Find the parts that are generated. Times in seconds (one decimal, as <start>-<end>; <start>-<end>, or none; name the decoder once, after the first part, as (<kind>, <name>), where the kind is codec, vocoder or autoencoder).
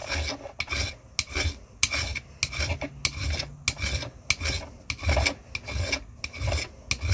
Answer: none